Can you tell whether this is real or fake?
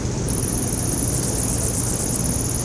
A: real